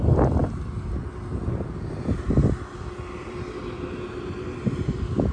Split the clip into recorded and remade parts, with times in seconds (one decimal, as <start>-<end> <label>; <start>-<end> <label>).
0.0-5.3 recorded